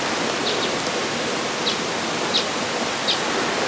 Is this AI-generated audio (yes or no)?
no